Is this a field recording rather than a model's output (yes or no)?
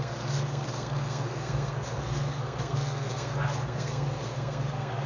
no